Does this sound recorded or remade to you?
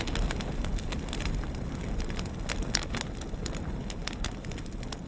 recorded